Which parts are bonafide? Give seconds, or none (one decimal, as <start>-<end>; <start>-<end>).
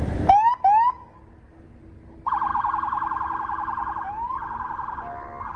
0.0-5.6